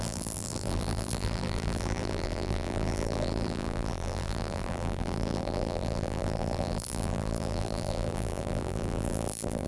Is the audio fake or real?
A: fake